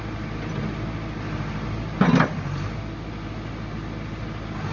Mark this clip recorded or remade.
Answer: recorded